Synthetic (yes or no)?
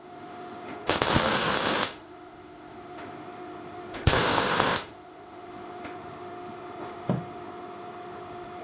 yes